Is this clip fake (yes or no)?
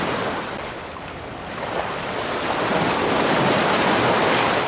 no